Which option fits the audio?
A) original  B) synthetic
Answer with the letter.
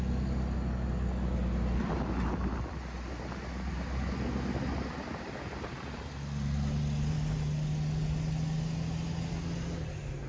A